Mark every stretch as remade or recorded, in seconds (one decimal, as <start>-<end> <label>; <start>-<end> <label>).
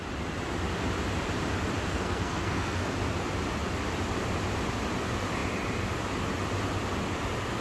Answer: 0.0-1.9 recorded; 1.9-2.9 remade; 2.9-7.6 recorded